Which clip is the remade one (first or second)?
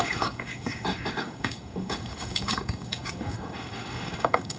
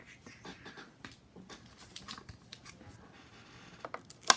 first